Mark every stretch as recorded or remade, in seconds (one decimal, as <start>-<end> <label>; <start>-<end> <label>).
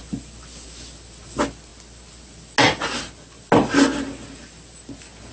0.0-5.3 recorded